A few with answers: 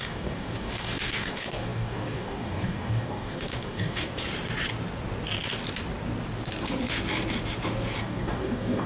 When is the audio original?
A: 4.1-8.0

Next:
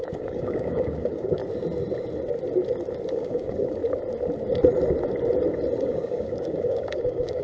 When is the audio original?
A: 1.4-3.1; 3.8-5.8

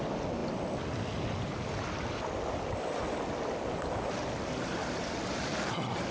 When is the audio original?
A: 0.0-6.1

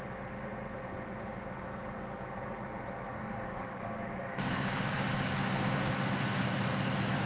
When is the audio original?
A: 0.0-3.1; 5.9-7.3

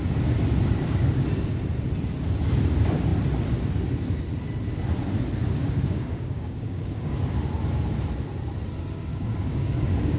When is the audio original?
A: 0.0-5.4; 7.2-9.1

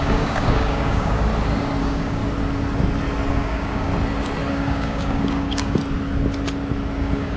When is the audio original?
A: 1.3-1.8; 2.2-3.3; 3.9-4.5; 5.8-7.0